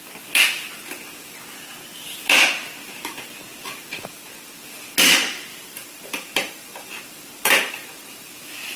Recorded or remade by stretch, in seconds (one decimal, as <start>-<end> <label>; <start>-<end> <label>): 0.0-5.5 recorded; 5.5-8.3 remade; 8.3-8.8 recorded